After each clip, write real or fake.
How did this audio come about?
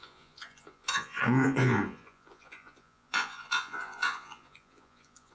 fake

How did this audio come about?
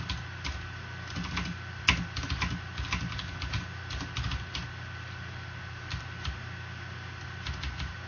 real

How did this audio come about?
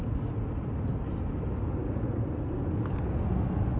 real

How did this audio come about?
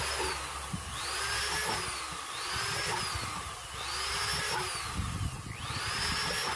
real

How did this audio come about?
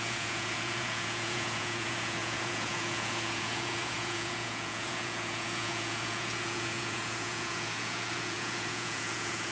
fake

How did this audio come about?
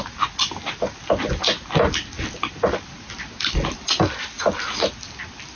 real